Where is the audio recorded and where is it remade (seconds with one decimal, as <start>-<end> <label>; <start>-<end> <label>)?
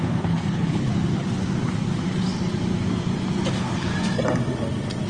0.0-0.9 remade; 0.9-3.5 recorded; 3.5-3.9 remade; 3.9-5.1 recorded